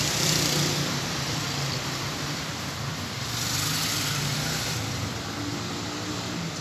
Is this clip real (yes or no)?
yes